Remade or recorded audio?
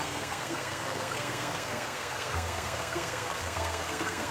remade